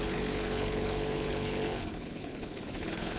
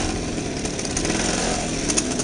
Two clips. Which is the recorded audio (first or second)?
second